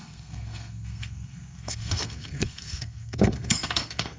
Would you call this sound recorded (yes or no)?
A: no